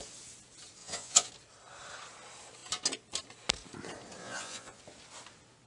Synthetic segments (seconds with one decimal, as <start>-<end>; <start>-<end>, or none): 0.8-1.3; 4.2-4.8